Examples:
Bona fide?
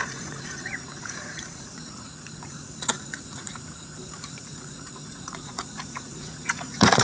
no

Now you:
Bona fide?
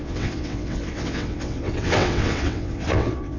no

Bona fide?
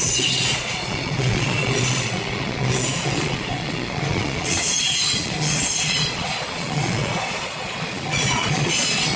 no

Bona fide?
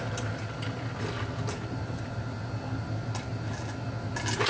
yes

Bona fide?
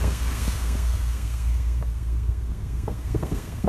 no